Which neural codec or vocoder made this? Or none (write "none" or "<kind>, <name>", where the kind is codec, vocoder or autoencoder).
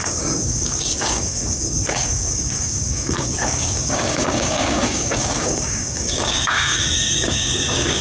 codec, DAC